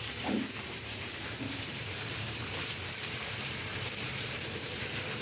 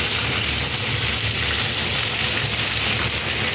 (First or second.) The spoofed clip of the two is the first